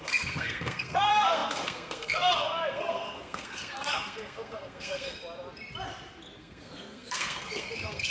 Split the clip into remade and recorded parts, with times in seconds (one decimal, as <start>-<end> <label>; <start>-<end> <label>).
0.0-5.2 remade; 5.2-6.4 recorded; 6.4-8.1 remade